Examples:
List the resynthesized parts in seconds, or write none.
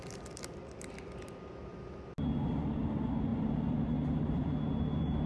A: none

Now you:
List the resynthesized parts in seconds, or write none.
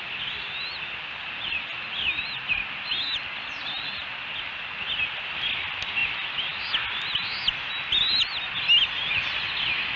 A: 6.0-7.1 (vocoder, BigVGAN v2)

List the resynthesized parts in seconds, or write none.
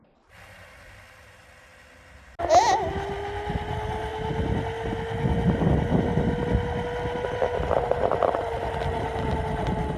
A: none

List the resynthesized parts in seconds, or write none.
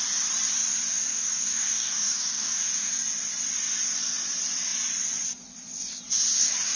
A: 1.1-2.9 (codec, DAC)